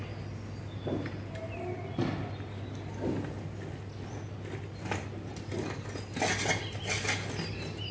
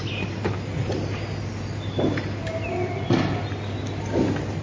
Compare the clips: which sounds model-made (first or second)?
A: second